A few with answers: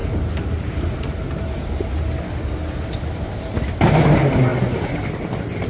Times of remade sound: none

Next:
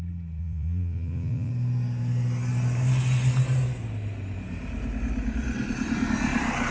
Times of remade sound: 0.4-1.5

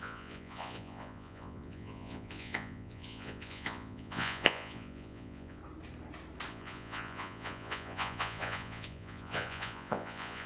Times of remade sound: 0.0-5.6; 6.5-10.5

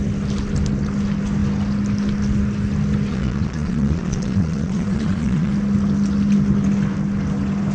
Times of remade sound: 3.1-5.5